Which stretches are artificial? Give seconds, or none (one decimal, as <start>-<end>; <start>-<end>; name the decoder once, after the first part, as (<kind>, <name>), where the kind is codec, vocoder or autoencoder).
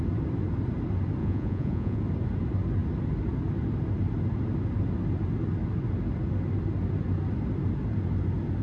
1.2-2.0 (vocoder, Vocos)